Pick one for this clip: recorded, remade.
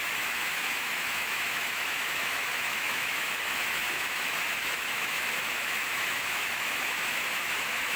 remade